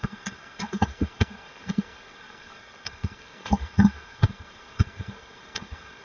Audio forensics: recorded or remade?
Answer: remade